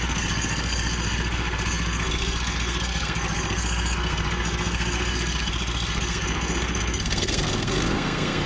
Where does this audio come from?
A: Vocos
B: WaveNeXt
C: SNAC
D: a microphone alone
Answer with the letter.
C